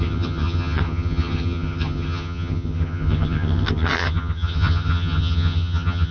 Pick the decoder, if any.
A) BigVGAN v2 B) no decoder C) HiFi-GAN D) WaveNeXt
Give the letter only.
C